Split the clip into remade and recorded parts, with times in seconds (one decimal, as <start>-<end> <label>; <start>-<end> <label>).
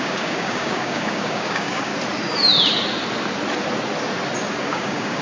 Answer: 0.0-1.9 remade; 1.9-4.6 recorded; 4.6-5.2 remade